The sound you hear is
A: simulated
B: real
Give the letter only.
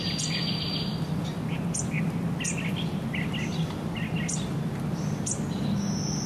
B